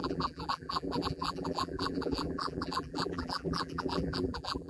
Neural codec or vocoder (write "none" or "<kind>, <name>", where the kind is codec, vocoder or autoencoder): vocoder, BigVGAN v2